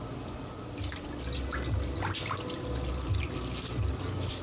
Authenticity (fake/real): real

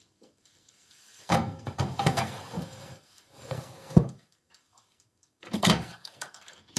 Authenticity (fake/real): fake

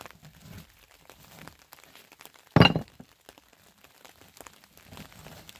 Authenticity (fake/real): real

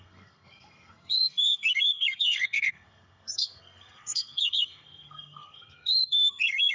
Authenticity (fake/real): fake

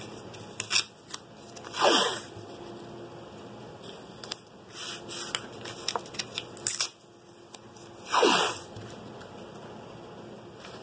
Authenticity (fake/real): real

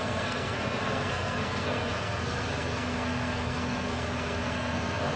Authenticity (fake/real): fake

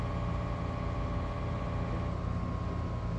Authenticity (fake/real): real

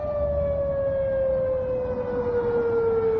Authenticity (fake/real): real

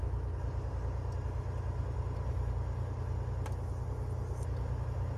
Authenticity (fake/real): real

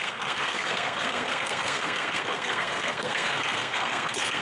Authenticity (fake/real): fake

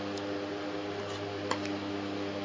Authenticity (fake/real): real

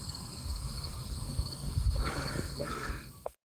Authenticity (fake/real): fake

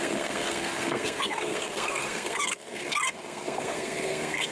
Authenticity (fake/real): fake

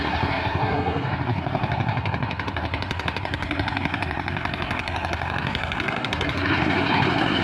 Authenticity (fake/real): fake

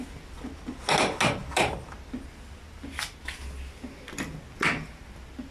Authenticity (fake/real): real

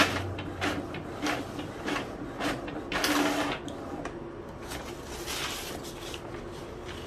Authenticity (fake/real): real